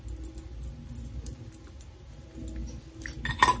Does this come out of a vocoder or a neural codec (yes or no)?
no